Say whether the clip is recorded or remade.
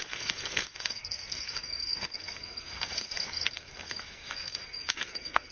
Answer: remade